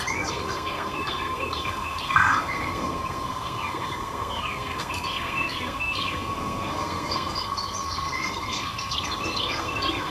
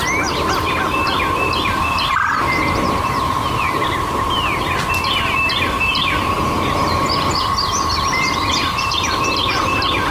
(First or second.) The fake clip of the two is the first